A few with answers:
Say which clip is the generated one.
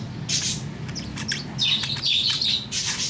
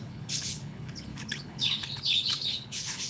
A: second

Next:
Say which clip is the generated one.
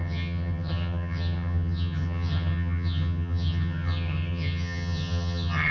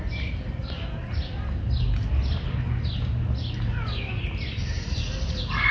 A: first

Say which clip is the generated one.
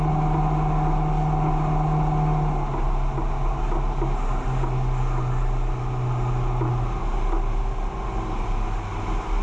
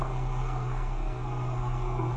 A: second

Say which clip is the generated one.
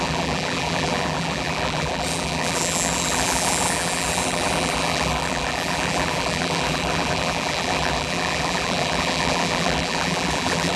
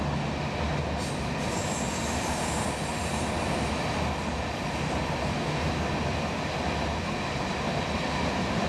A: first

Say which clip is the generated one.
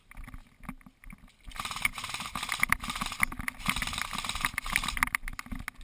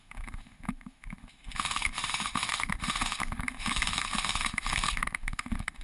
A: second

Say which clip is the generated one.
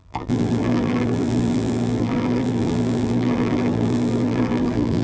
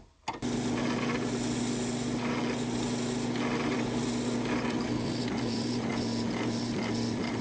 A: first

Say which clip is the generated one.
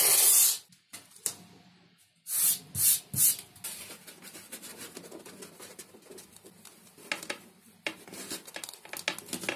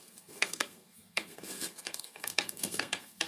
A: second